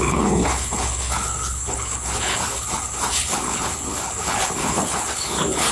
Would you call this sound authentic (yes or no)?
no